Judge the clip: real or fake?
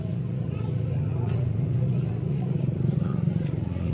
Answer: fake